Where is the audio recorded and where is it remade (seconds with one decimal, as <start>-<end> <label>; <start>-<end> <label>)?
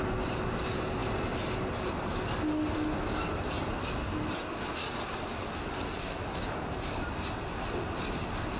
0.0-8.6 recorded